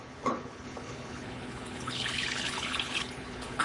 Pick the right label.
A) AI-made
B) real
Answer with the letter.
A